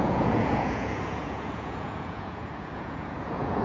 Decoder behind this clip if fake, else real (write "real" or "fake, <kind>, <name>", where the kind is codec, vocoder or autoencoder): fake, vocoder, Vocos